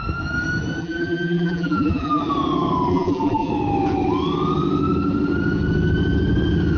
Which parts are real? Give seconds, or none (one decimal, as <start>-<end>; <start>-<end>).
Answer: 0.0-0.8; 2.2-2.9; 3.5-6.8